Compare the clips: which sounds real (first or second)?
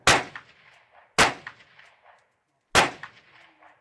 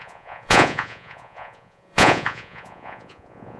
first